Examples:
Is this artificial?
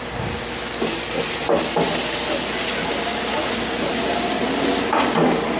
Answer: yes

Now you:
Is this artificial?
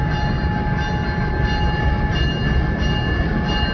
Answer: no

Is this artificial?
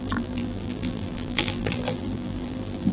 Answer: yes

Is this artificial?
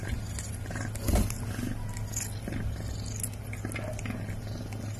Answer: no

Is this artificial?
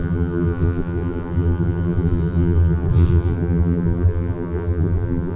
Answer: yes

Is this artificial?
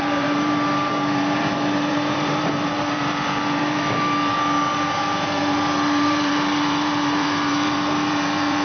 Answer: yes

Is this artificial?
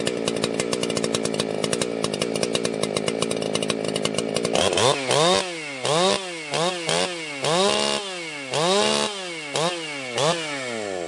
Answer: no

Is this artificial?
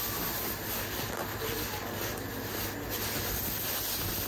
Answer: no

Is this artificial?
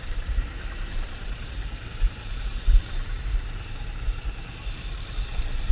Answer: yes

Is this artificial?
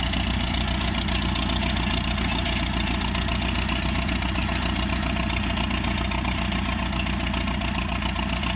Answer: no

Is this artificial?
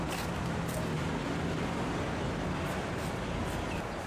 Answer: no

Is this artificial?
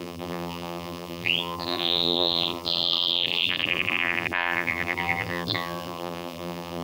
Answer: yes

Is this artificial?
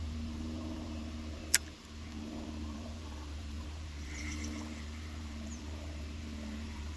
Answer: yes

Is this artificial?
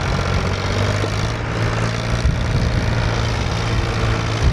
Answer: no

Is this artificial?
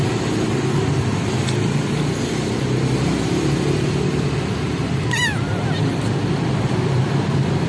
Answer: yes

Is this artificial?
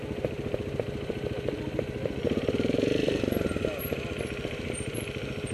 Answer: yes